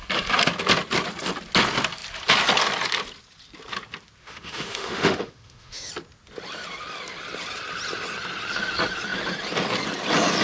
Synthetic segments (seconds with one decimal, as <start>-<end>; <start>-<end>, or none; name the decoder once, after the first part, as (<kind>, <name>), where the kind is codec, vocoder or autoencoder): 4.2-5.9 (autoencoder, DAC-VAE)